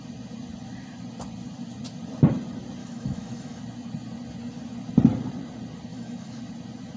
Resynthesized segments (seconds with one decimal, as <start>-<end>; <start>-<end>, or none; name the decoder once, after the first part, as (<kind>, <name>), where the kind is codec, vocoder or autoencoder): 2.8-3.6 (autoencoder, DAC-VAE); 5.9-6.4